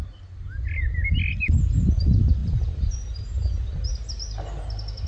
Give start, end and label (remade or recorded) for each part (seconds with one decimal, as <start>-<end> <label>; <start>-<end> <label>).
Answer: 0.0-5.1 recorded